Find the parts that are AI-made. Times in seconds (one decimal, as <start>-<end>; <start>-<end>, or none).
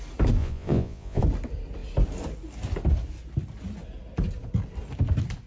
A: 0.4-1.2